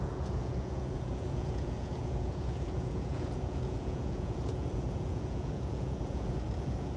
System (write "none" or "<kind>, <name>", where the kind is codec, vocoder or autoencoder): vocoder, Vocos